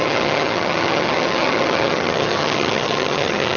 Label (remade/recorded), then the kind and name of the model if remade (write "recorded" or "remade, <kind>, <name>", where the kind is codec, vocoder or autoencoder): remade, vocoder, HiFi-GAN